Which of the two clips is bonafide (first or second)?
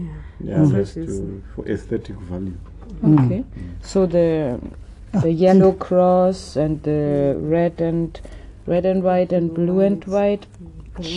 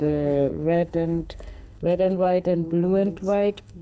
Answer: first